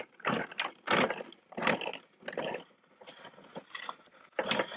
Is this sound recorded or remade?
recorded